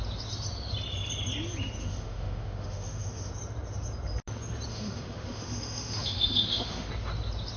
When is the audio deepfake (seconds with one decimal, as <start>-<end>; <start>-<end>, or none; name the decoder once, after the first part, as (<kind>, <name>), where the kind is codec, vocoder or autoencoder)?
1.8-3.3 (autoencoder, DAC-VAE); 4.7-6.9